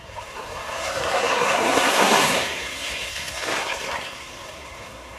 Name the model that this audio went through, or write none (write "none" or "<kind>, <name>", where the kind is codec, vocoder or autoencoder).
codec, SNAC